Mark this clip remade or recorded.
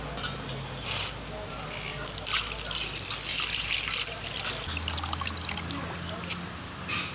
recorded